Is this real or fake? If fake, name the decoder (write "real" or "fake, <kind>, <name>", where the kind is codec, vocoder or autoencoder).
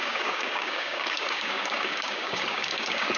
fake, codec, DAC